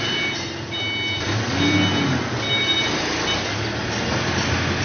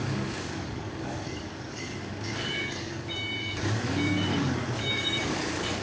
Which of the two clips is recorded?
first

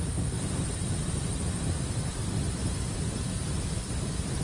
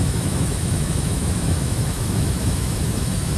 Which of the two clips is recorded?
first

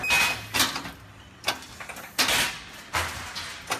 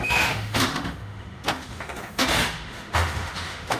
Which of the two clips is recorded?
first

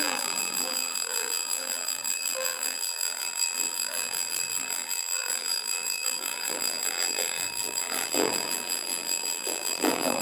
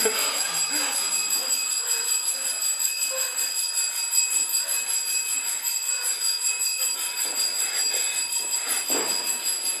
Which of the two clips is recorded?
second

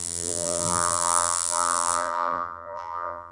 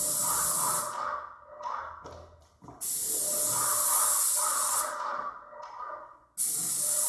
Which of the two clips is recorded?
second